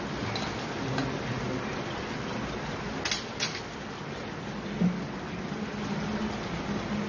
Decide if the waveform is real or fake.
real